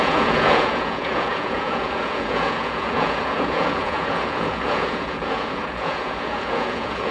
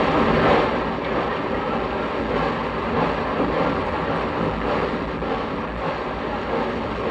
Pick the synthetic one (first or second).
first